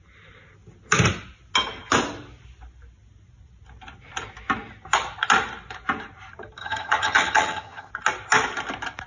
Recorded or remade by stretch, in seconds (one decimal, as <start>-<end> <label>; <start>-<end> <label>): 0.0-6.6 recorded; 6.6-7.9 remade; 7.9-9.1 recorded